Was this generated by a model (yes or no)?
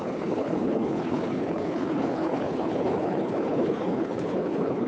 yes